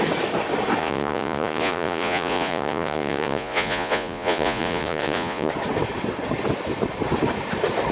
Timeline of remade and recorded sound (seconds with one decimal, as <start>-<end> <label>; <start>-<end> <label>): 0.0-0.8 recorded; 0.8-5.5 remade; 5.5-7.9 recorded